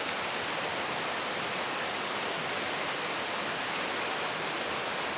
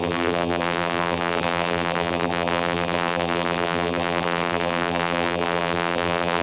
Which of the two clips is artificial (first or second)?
second